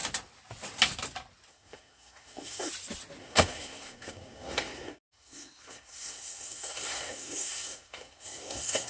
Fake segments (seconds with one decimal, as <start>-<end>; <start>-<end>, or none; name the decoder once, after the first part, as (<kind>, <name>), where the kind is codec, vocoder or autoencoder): 1.5-2.7 (codec, SNAC); 3.2-8.9

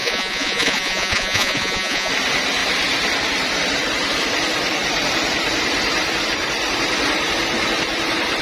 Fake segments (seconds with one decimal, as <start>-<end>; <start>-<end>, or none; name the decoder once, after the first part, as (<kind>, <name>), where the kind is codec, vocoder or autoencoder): 0.0-2.1 (vocoder, Vocos)

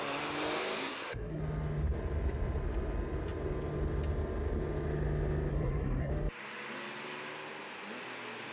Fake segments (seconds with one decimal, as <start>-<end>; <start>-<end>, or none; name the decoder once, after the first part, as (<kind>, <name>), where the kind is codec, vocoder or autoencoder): 0.8-1.4 (codec, SNAC); 5.5-6.1

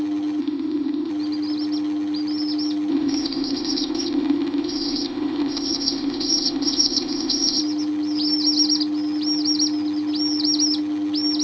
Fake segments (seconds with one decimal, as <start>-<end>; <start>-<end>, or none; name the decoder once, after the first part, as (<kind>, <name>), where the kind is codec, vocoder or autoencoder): 0.4-1.1 (codec, ZipCodec); 2.9-7.6

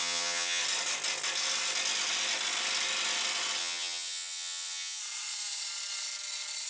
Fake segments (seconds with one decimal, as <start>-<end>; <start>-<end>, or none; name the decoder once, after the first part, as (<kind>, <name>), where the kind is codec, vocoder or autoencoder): 0.0-0.6 (vocoder, HiFi-GAN); 3.6-5.0

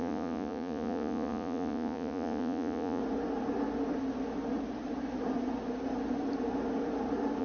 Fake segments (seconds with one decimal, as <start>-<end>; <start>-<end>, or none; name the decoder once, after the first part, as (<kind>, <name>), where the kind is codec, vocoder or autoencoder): 0.0-3.0 (vocoder, Vocos)